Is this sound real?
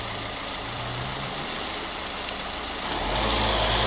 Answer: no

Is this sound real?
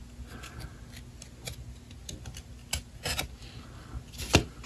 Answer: yes